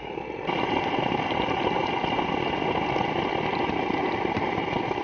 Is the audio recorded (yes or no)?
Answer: yes